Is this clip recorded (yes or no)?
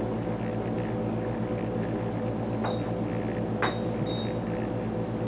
yes